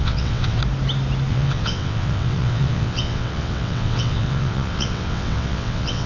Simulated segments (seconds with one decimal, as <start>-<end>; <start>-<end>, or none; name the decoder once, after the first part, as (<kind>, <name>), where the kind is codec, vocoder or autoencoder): 0.0-0.6 (vocoder, WaveNeXt); 1.3-6.1